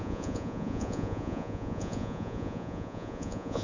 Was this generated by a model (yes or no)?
yes